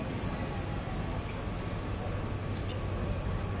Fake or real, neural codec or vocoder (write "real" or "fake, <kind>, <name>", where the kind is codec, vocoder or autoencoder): real